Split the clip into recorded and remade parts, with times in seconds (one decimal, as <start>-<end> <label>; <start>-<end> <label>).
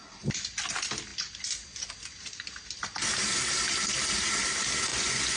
0.0-4.9 recorded; 4.9-5.4 remade